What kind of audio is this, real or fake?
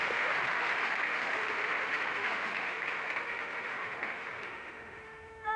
fake